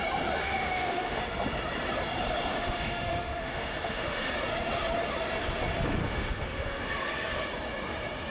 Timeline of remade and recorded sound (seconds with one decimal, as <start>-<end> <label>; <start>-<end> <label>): 0.0-0.4 recorded; 0.4-1.2 remade; 1.2-2.5 recorded; 2.5-4.3 remade; 4.3-6.0 recorded; 6.0-6.8 remade; 6.8-8.3 recorded